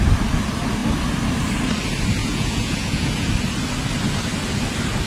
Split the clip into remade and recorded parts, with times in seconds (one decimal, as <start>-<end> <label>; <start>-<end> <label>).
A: 0.0-2.2 recorded; 2.2-3.3 remade; 3.3-5.1 recorded